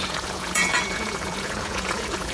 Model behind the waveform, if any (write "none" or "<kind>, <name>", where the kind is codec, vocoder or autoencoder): vocoder, Vocos